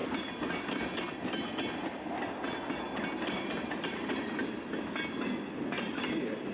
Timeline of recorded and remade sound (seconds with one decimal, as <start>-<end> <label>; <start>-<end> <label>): 0.0-3.5 recorded; 3.5-4.4 remade; 4.4-5.5 recorded; 5.5-6.5 remade